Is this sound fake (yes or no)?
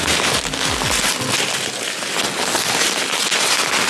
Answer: no